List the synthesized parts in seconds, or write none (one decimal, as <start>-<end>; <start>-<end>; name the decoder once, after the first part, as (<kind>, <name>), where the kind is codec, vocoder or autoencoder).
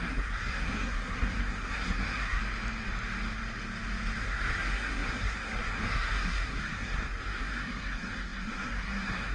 0.0-2.4 (codec, SNAC); 4.2-9.3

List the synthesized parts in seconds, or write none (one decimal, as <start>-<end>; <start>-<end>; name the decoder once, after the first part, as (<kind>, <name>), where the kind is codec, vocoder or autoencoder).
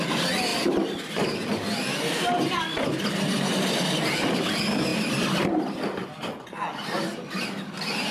none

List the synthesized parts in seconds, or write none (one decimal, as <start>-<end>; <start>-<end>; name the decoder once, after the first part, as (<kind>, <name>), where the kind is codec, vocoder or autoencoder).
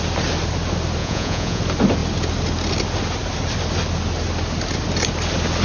1.0-1.6 (vocoder, Vocos)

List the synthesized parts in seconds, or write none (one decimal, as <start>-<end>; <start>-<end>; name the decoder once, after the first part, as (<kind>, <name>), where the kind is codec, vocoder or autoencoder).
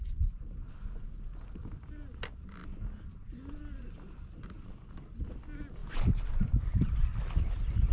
none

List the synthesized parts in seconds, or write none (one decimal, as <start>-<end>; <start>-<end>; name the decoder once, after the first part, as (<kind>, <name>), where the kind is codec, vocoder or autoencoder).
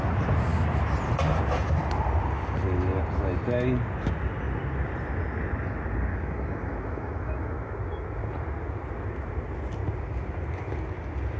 6.1-7.7 (autoencoder, DAC-VAE)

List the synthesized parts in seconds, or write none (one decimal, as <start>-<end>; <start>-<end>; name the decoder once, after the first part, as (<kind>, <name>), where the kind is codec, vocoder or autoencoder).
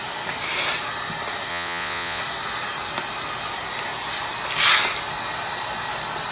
1.5-2.2 (vocoder, Vocos)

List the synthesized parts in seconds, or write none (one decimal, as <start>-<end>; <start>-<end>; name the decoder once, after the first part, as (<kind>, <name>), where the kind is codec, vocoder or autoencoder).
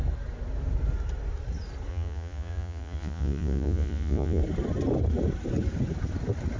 1.9-4.4 (vocoder, Vocos)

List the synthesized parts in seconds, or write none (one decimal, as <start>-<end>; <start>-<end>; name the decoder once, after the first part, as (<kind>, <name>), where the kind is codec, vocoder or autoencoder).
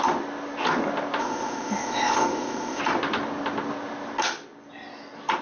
1.2-2.8 (codec, ZipCodec)